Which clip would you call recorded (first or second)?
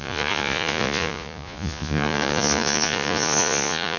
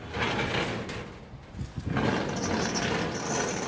second